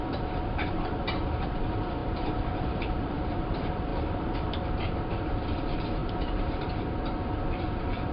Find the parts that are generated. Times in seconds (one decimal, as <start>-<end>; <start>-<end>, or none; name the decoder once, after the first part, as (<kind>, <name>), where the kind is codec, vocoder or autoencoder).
0.0-3.9 (vocoder, BigVGAN v2); 4.6-8.1